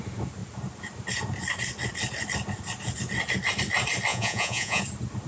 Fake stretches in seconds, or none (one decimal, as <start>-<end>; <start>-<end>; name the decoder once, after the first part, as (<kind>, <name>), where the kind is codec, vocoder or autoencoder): 4.1-4.8 (vocoder, Vocos)